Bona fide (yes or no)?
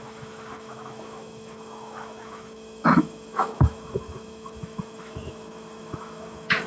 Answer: no